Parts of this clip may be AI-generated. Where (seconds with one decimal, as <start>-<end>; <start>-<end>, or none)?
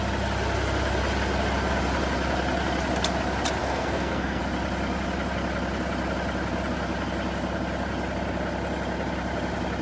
3.6-4.4